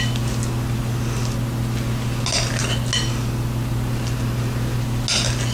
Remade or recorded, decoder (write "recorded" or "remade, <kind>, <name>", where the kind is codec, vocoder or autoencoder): recorded